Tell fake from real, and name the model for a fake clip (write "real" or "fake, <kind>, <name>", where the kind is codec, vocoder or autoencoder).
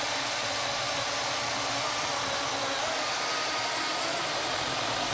real